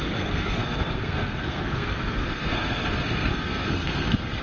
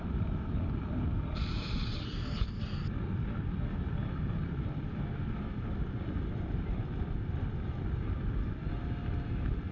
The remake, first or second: first